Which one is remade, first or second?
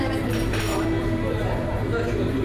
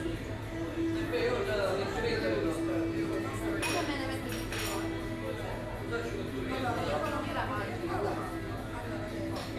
first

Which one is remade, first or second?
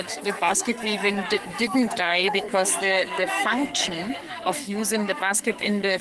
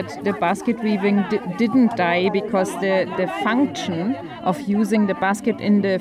first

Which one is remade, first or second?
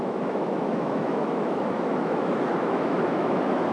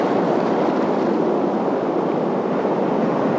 first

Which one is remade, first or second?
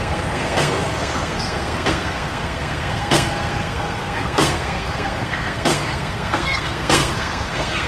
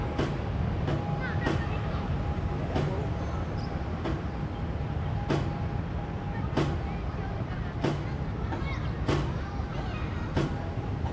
first